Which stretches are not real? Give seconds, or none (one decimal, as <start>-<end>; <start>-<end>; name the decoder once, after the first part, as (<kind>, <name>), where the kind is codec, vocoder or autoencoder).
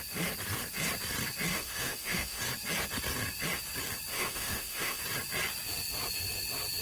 1.5-2.4 (autoencoder, DAC-VAE); 4.1-5.0